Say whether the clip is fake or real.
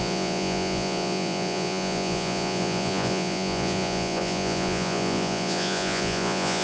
fake